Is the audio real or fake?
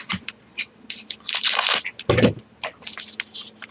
real